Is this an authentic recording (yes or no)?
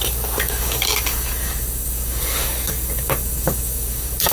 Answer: no